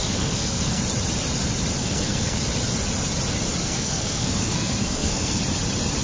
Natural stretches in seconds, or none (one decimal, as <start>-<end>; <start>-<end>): 0.8-1.8; 2.4-3.6; 5.4-6.0

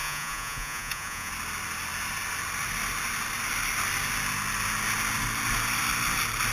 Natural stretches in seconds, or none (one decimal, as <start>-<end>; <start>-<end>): 1.3-6.5

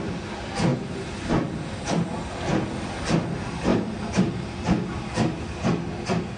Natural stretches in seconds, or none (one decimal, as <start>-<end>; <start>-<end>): 0.0-0.7; 1.3-3.7; 5.4-6.4

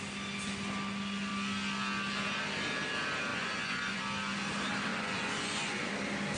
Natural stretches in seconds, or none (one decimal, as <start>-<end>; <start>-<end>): 0.0-3.3; 4.0-4.9; 5.9-6.4

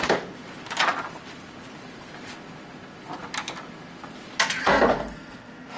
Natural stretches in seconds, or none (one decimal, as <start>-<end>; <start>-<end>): 0.0-4.6